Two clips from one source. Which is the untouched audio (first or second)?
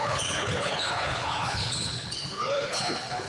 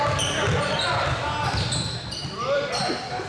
second